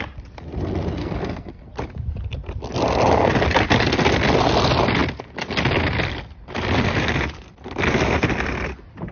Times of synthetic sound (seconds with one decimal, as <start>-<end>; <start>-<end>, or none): 1.0-1.7